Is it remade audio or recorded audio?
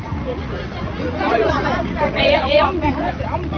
remade